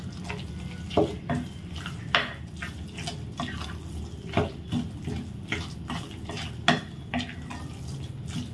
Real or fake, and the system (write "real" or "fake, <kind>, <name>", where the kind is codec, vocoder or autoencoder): real